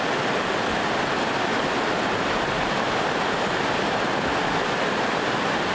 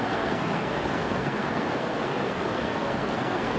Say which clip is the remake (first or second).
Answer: second